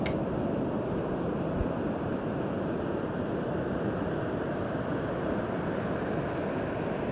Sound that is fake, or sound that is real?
real